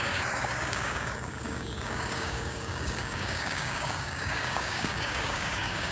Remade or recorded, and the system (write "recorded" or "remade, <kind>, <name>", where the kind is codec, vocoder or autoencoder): remade, codec, DAC